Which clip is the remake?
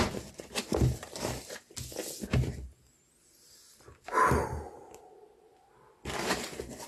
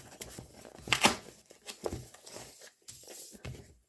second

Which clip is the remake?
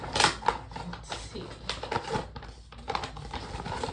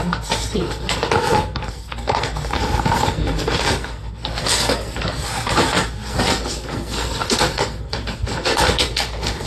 second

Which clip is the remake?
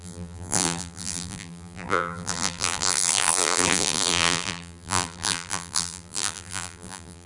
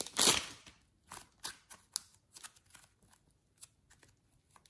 first